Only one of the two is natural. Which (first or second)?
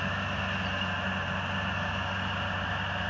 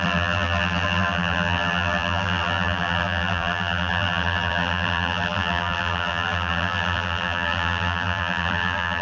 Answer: first